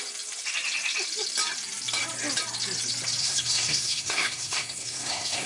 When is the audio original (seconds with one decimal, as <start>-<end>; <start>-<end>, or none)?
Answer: 0.0-3.2